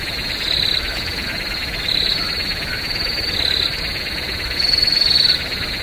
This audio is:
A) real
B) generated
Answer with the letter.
B